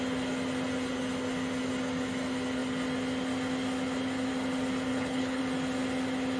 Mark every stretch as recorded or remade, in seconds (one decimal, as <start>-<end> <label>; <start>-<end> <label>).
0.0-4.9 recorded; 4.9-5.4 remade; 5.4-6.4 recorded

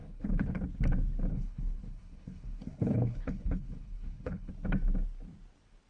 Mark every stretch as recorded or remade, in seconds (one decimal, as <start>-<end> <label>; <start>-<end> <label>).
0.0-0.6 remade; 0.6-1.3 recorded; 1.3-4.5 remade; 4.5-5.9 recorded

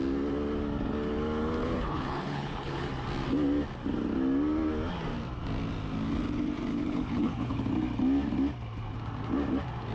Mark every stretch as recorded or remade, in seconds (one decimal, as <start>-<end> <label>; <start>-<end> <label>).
0.0-1.6 recorded; 1.6-2.9 remade; 2.9-6.7 recorded; 6.7-7.7 remade; 7.7-9.9 recorded